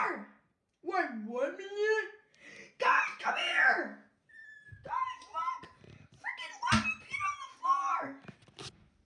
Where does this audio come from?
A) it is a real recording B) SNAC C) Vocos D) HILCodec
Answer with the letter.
A